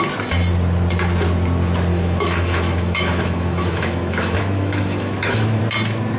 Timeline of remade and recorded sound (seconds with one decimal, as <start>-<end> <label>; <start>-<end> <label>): 0.0-1.9 recorded; 1.9-5.6 remade; 5.6-6.2 recorded

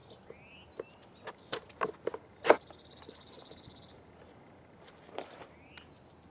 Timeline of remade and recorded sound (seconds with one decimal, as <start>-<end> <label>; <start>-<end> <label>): 0.0-6.3 recorded

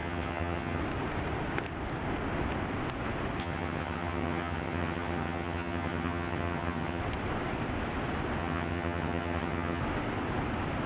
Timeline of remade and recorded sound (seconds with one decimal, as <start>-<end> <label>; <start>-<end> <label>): 0.0-0.8 remade; 0.8-3.4 recorded; 3.4-7.0 remade; 7.0-8.4 recorded; 8.4-9.8 remade; 9.8-10.9 recorded

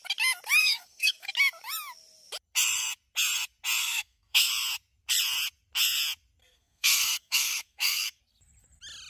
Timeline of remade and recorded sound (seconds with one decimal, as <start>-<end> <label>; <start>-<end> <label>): 0.0-0.6 recorded; 0.6-1.3 remade; 1.3-3.8 recorded; 3.8-4.5 remade; 4.5-6.4 recorded; 6.4-8.2 remade; 8.2-9.1 recorded